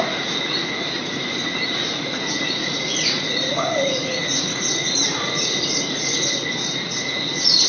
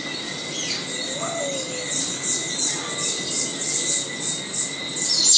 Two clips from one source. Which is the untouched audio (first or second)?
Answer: second